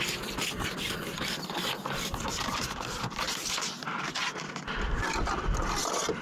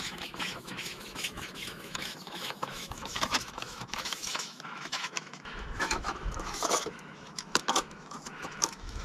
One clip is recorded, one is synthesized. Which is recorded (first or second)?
first